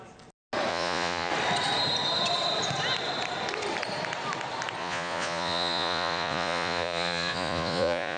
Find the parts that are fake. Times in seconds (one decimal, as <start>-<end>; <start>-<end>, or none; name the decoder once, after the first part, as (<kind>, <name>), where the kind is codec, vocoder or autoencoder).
0.7-1.3 (vocoder, Vocos); 4.8-8.2